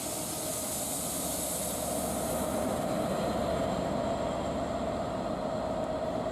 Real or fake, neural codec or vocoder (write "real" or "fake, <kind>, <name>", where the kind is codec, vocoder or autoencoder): real